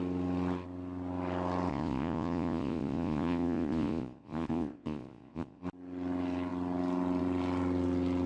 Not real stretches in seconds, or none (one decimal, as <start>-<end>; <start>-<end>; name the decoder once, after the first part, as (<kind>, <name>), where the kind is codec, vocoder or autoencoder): 1.7-5.6 (vocoder, Vocos)